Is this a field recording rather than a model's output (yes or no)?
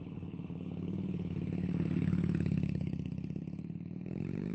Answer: no